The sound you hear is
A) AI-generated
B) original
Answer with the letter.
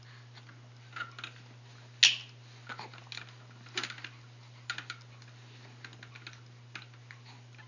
B